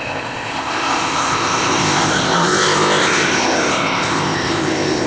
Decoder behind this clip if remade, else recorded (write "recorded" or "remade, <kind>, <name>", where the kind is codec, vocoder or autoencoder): remade, codec, ZipCodec